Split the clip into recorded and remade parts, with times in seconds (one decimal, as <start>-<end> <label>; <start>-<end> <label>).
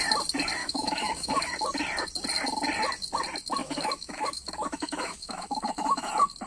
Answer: 0.0-0.6 recorded; 0.6-1.5 remade; 1.5-3.6 recorded; 3.6-6.1 remade; 6.1-6.5 recorded